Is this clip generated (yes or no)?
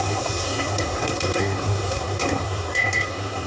yes